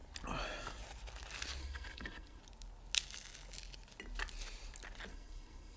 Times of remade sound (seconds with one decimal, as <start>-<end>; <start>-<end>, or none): 1.6-2.4; 5.1-5.8